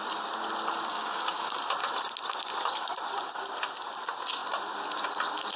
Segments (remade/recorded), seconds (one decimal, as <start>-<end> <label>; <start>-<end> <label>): 0.0-0.9 recorded; 0.9-1.6 remade; 1.6-5.6 recorded